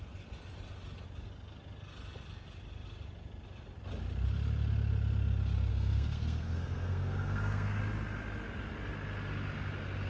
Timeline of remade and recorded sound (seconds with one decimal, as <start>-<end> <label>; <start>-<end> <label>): 0.0-5.7 recorded; 5.7-7.8 remade; 7.8-10.1 recorded